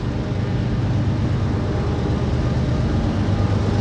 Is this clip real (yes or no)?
yes